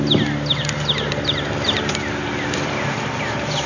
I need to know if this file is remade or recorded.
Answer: recorded